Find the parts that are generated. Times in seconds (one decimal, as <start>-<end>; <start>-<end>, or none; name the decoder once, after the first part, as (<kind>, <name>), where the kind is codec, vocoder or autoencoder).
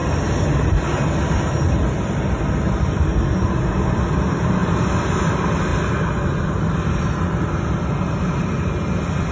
none